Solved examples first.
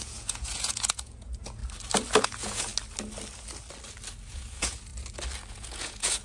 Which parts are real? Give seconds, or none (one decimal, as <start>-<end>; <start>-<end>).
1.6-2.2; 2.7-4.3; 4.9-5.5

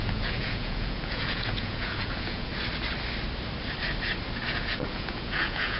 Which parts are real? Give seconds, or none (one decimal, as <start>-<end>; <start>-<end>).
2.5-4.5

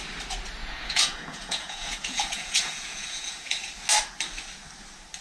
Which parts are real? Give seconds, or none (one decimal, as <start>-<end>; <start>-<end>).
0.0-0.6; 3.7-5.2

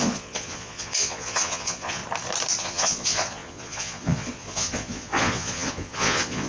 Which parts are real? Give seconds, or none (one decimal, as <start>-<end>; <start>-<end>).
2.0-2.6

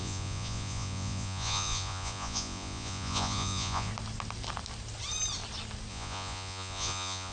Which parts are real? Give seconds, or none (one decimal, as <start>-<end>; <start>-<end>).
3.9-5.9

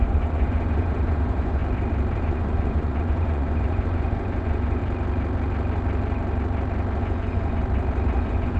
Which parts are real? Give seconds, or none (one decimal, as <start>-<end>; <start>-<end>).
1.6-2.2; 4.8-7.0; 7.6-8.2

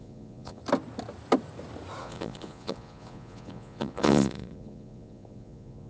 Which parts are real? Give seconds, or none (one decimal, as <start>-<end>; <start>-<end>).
0.6-2.0